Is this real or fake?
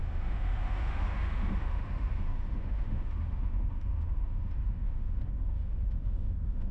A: fake